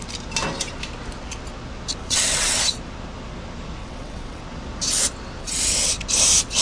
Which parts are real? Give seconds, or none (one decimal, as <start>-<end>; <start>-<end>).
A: 0.0-2.0; 2.6-3.8; 4.4-5.4; 5.9-6.6